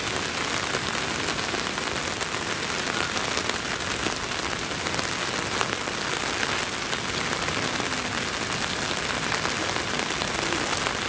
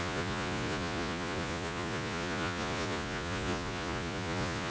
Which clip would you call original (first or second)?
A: first